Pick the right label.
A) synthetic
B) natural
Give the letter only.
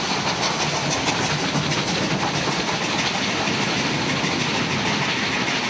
B